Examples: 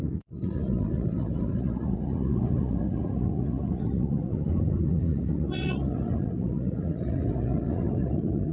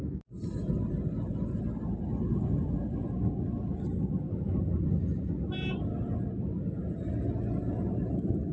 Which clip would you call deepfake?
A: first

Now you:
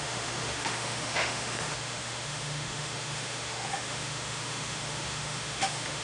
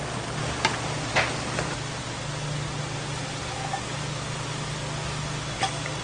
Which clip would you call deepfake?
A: first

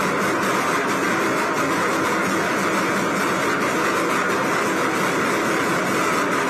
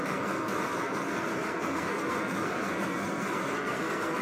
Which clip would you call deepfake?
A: second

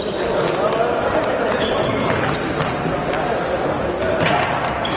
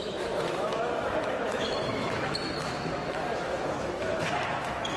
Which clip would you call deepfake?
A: second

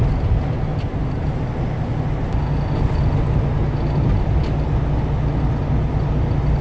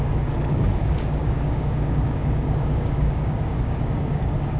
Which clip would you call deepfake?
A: second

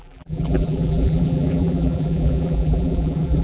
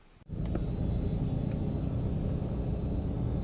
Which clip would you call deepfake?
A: first